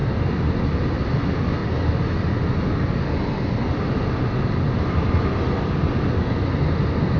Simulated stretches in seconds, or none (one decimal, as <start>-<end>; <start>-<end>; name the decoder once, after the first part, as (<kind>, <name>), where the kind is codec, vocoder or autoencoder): none